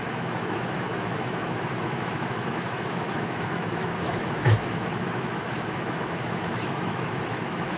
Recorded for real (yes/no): no